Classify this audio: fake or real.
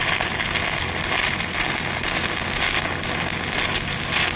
real